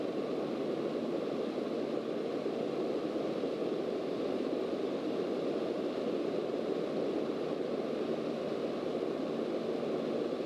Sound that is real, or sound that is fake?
real